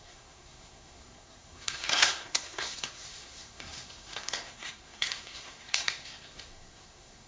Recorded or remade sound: remade